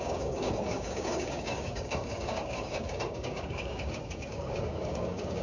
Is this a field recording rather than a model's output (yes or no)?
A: no